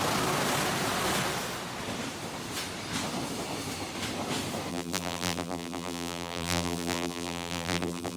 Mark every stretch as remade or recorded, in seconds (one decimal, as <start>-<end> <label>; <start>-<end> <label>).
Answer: 0.0-4.7 recorded; 4.7-8.2 remade